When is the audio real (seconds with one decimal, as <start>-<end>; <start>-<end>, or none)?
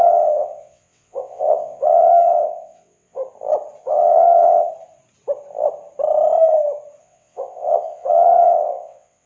3.2-3.8; 4.7-7.0